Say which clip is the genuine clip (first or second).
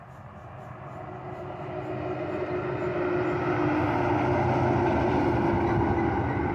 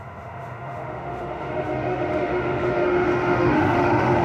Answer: first